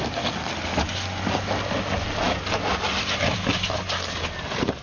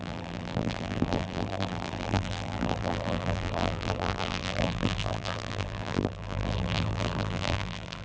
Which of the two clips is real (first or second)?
first